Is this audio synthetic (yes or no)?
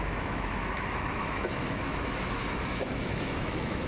yes